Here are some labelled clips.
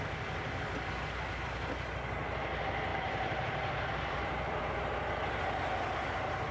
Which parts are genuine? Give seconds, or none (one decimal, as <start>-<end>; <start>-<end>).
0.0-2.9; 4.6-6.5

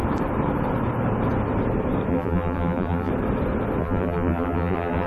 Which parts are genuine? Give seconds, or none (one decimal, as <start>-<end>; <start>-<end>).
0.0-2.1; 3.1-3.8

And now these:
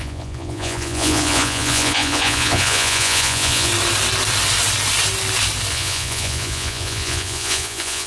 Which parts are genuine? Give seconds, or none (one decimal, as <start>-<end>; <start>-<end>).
3.7-5.7

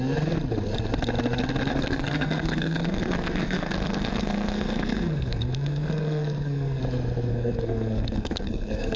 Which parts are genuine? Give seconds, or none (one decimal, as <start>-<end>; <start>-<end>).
0.0-1.7; 6.8-7.3

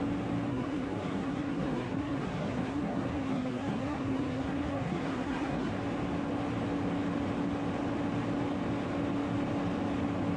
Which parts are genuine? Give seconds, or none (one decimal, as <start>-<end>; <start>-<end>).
0.0-0.5; 5.7-10.4